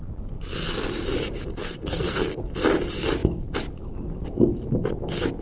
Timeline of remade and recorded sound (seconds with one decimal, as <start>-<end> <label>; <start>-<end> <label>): 0.0-1.6 recorded; 1.6-2.4 remade; 2.4-5.4 recorded